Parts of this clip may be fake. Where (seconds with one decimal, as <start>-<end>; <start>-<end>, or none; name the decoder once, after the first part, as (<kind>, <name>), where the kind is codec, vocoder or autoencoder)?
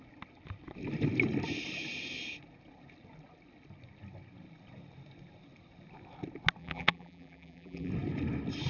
6.6-7.9 (vocoder, BigVGAN v2)